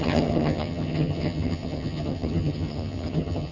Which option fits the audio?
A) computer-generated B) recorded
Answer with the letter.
A